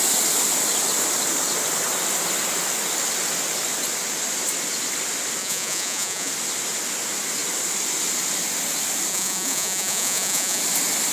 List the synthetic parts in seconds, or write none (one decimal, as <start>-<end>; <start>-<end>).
5.4-6.3; 9.1-10.6